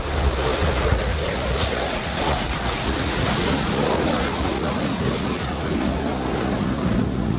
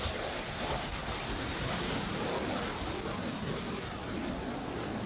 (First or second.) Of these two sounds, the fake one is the first